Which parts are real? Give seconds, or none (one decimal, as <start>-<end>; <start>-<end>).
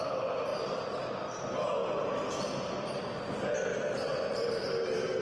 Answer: 0.0-0.5; 1.1-1.8; 2.7-3.7